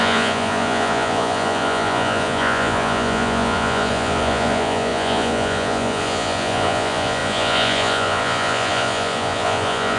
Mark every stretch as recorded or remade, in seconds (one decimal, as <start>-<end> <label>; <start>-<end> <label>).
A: 0.0-10.0 remade